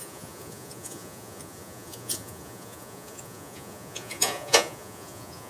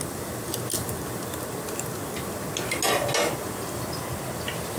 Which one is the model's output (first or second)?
first